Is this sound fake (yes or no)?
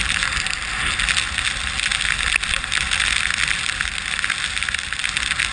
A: no